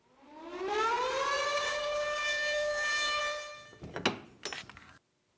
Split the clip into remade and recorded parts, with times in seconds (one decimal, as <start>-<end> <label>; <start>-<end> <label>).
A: 0.0-1.5 recorded; 1.5-3.2 remade; 3.2-5.4 recorded